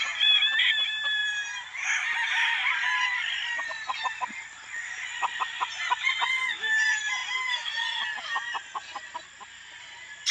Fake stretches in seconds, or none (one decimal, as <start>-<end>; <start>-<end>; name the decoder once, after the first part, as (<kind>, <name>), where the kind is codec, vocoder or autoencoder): 0.0-7.2 (vocoder, BigVGAN v2); 9.8-10.3